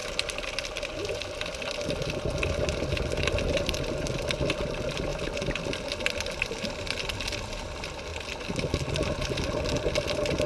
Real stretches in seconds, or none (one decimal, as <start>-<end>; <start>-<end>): 0.0-10.5